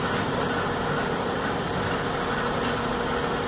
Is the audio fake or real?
real